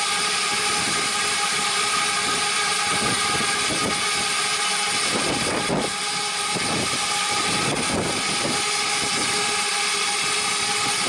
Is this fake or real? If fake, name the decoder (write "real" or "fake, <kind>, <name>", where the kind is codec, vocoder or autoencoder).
real